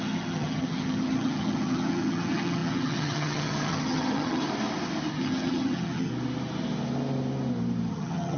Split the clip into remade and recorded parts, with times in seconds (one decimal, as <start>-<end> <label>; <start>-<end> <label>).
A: 0.0-4.4 remade; 4.4-5.1 recorded; 5.1-6.1 remade; 6.1-7.9 recorded; 7.9-8.4 remade